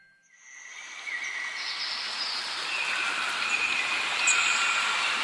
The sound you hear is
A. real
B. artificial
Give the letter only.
A